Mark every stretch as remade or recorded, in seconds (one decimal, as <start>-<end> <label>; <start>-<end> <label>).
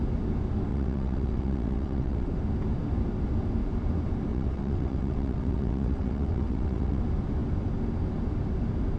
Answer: 0.0-0.7 recorded; 0.7-2.3 remade; 2.3-4.3 recorded; 4.3-7.0 remade; 7.0-9.0 recorded